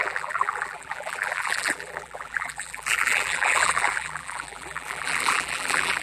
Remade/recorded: remade